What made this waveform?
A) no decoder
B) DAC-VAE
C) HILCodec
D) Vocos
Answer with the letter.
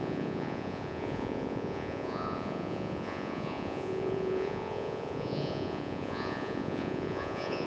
D